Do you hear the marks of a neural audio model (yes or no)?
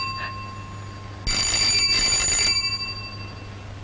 no